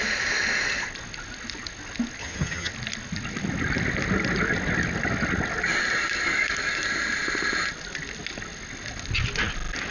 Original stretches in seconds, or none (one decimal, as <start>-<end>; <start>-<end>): 0.0-2.2; 2.7-9.9